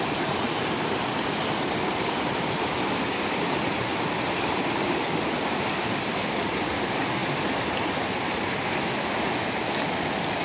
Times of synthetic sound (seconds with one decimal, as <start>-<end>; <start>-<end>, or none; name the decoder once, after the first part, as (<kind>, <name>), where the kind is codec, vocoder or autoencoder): none

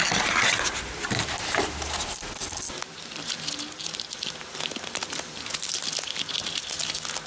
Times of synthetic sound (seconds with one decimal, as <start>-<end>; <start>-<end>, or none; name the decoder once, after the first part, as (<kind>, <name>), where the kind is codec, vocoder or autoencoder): none

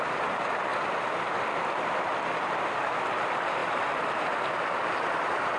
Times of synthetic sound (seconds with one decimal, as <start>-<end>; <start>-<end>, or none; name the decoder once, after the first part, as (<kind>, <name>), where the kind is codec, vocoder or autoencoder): none

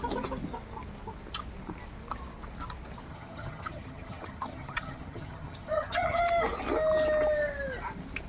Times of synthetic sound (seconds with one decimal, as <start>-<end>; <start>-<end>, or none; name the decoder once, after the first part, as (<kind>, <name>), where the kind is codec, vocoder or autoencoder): 3.1-6.2 (vocoder, HiFi-GAN)

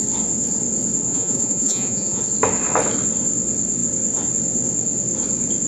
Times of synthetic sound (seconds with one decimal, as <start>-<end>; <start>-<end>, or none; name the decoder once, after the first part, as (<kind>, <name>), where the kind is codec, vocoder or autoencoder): 1.1-2.2 (vocoder, Vocos)

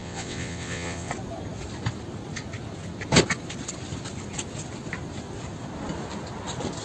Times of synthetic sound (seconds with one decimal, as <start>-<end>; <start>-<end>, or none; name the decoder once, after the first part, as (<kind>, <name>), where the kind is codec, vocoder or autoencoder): 0.0-1.1 (vocoder, WaveNeXt)

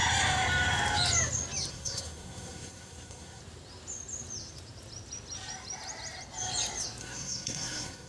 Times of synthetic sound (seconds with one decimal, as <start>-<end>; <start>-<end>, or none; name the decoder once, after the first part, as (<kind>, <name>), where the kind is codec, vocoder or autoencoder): 1.7-3.4 (codec, SNAC); 7.0-8.1